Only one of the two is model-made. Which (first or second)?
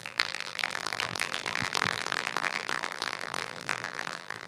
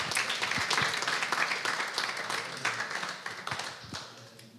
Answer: first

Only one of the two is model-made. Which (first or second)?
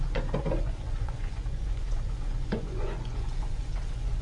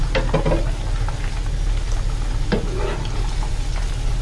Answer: first